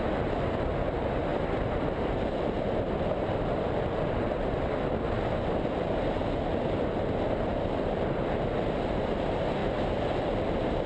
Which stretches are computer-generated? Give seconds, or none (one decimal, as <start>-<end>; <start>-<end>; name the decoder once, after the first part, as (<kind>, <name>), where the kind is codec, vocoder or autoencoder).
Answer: 1.3-4.9 (vocoder, BigVGAN v2); 7.5-8.3; 9.6-10.5